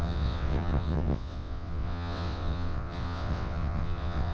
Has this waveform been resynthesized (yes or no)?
yes